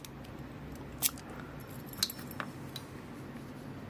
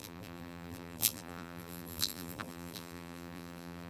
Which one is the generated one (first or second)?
second